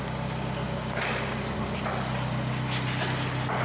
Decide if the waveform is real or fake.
real